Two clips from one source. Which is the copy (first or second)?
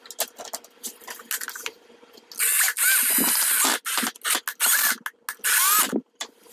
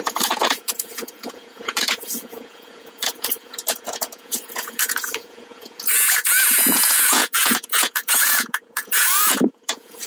second